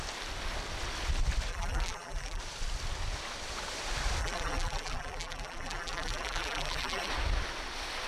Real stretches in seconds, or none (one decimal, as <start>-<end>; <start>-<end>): 0.0-1.5; 2.4-4.2; 7.1-8.1